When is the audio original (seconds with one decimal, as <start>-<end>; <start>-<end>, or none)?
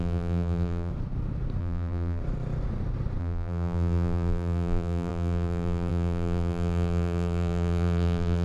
0.9-1.6; 2.2-3.2